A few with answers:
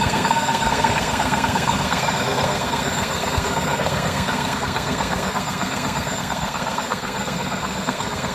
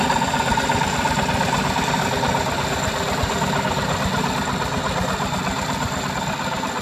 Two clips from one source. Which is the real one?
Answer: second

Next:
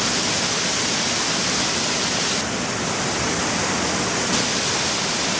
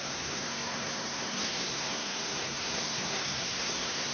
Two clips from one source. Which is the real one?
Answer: first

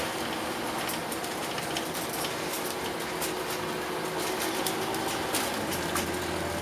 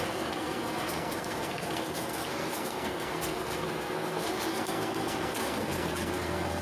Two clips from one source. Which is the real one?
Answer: first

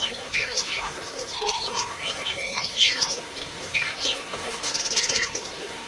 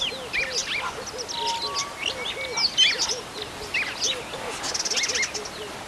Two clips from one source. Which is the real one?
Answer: second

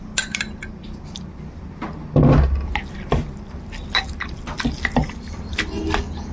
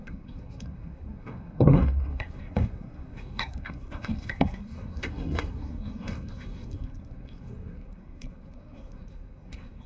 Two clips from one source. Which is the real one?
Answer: first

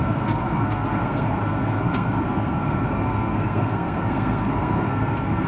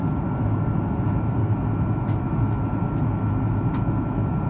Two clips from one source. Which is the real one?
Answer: second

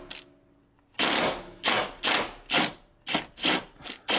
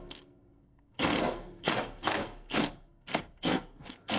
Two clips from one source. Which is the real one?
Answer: first